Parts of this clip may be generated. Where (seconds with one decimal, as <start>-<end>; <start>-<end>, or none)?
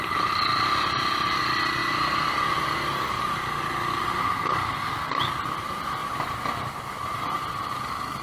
6.0-6.9